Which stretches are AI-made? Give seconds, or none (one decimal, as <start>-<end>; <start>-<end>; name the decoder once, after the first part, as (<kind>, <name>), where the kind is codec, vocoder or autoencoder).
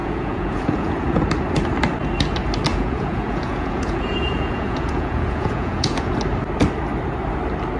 0.0-1.2 (vocoder, Vocos); 2.7-6.1